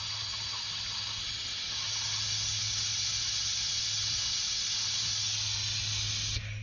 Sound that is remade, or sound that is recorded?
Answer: recorded